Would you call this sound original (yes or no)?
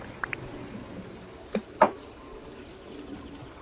yes